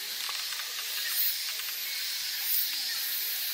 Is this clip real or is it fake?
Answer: real